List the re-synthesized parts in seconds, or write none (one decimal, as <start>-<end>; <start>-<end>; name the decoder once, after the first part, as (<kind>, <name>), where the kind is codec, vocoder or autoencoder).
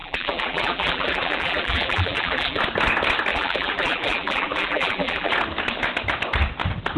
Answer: 0.0-2.6 (vocoder, BigVGAN v2); 3.3-5.3